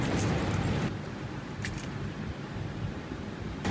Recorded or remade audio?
remade